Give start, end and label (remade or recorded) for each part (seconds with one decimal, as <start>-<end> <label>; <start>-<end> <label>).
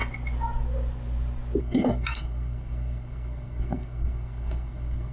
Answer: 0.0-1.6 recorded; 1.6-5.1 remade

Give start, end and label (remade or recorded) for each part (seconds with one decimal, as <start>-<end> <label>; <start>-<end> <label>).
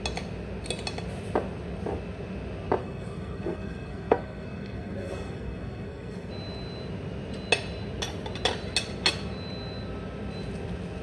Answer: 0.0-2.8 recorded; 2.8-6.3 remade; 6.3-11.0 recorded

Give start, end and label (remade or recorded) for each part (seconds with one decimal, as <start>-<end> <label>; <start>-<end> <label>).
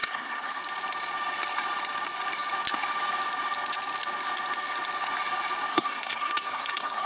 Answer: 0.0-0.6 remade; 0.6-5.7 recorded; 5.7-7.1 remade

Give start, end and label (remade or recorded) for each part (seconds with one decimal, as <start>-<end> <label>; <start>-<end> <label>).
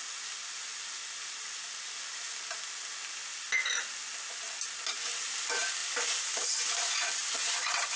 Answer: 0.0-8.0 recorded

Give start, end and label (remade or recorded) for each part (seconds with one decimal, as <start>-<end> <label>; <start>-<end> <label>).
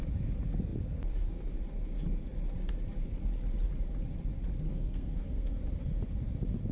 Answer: 0.0-4.7 recorded; 4.7-5.6 remade; 5.6-6.7 recorded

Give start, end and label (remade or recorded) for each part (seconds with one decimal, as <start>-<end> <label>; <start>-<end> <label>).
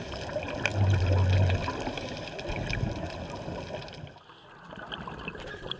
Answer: 0.0-5.8 recorded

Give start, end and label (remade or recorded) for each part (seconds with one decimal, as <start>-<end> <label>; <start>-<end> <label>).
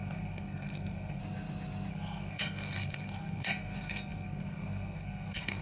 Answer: 0.0-1.2 remade; 1.2-1.9 recorded; 1.9-5.6 remade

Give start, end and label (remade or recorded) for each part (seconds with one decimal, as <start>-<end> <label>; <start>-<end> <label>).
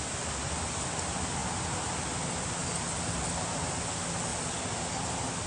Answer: 0.0-5.5 recorded